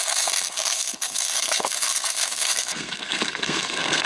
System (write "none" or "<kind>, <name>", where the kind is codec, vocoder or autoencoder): codec, SNAC